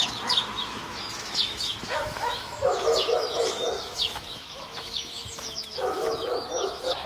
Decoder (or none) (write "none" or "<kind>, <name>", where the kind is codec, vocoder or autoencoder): autoencoder, DAC-VAE